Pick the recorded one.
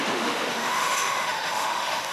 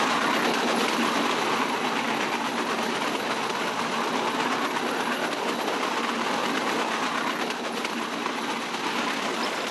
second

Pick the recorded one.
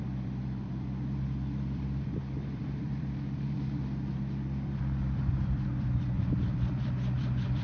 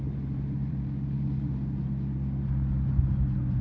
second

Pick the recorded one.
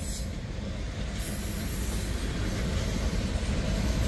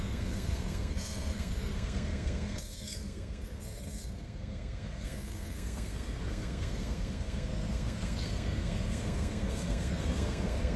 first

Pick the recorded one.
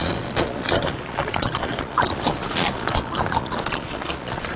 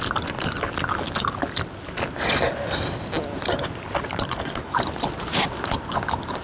second